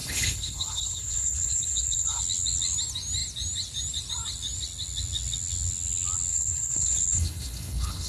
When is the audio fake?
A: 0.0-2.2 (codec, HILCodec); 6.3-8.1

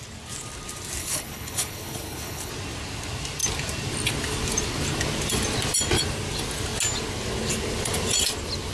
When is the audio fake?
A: 1.0-2.5 (codec, HILCodec)

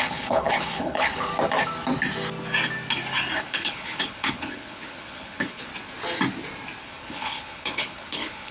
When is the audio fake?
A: 0.0-1.3 (codec, HILCodec); 3.4-5.7; 6.8-8.5

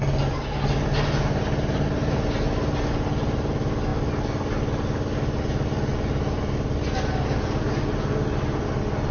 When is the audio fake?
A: none

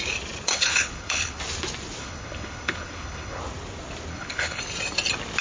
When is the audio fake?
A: 0.5-1.4 (codec, HILCodec); 2.0-3.4; 4.1-4.6

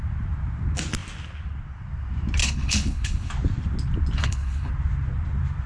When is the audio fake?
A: 2.4-3.3 (codec, HILCodec); 4.2-4.7

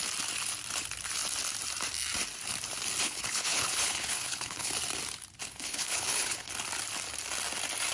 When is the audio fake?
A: 3.0-4.7 (codec, HILCodec); 5.4-6.5

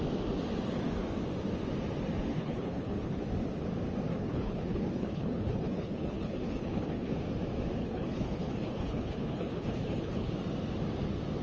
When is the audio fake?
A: 2.3-3.2 (codec, HILCodec); 4.1-7.1; 7.8-10.3